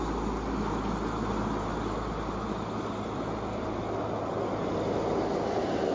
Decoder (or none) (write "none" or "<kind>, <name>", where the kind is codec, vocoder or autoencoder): none